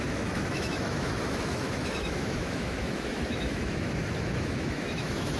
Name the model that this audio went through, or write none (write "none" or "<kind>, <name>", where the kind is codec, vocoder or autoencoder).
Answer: autoencoder, DAC-VAE